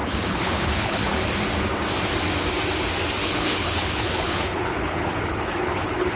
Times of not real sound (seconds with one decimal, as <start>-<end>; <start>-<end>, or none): 0.0-1.3; 3.2-6.2